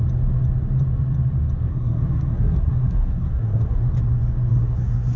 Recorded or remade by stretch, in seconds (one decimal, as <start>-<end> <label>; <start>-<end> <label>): 0.0-1.7 recorded; 1.7-3.8 remade; 3.8-4.5 recorded; 4.5-5.2 remade